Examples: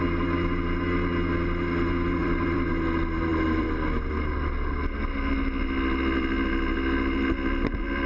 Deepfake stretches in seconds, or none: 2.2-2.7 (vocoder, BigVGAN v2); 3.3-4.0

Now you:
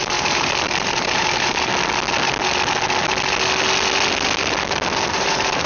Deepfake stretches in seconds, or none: 0.0-1.7 (vocoder, BigVGAN v2); 5.1-5.7